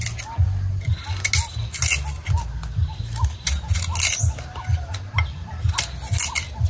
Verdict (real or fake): real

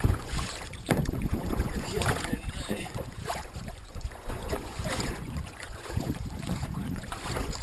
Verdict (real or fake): fake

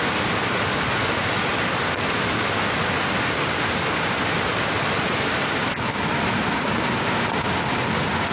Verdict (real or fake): real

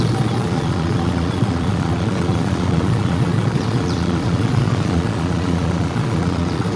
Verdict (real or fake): fake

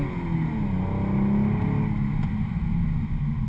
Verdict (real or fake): real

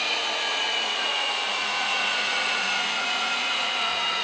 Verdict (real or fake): fake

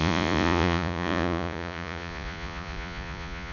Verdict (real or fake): fake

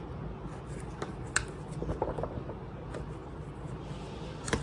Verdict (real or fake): real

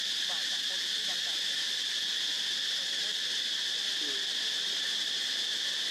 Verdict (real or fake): real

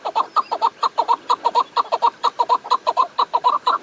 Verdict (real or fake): real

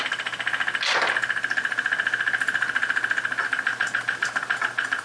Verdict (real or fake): real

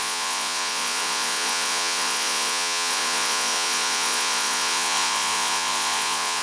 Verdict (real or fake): fake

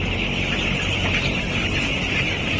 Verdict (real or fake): real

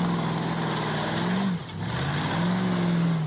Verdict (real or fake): real